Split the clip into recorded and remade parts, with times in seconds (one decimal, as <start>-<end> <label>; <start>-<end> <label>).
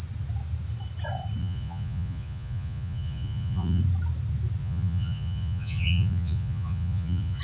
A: 0.0-1.4 recorded; 1.4-3.8 remade; 3.8-4.6 recorded; 4.6-7.4 remade